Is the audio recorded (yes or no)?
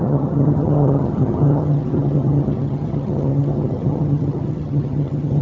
no